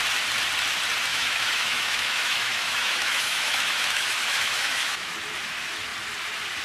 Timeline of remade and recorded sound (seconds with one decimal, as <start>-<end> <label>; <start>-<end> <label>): 0.0-1.1 recorded; 1.1-5.1 remade; 5.1-6.6 recorded